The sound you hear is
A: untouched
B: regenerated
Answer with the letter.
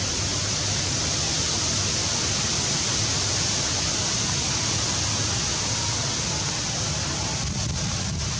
A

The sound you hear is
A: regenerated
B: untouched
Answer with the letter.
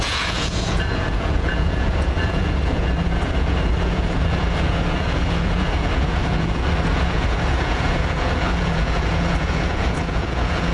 A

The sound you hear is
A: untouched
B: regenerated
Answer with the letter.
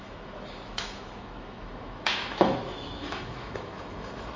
B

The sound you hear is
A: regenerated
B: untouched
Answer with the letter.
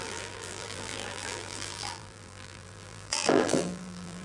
A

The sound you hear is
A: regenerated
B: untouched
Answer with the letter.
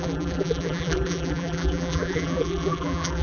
A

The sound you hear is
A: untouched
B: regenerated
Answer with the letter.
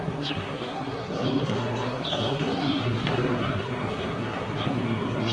B